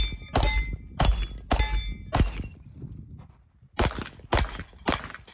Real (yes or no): yes